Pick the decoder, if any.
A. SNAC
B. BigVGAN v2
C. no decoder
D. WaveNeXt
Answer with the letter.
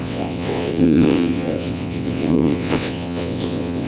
D